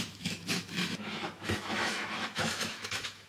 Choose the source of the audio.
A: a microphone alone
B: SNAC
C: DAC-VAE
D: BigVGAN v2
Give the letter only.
C